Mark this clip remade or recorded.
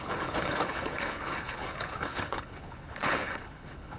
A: remade